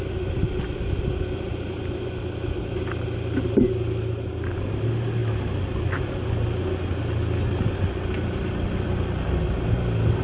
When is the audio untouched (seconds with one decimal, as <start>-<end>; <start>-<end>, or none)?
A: 0.0-10.2